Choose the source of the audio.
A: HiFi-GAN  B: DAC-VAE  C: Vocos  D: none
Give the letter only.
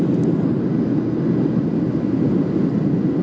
D